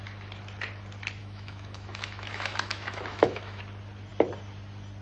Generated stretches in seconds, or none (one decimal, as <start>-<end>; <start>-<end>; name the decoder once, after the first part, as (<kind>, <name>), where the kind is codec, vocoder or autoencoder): 1.2-3.6 (autoencoder, DAC-VAE)